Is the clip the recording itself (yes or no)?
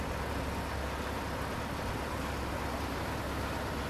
yes